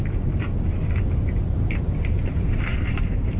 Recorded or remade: remade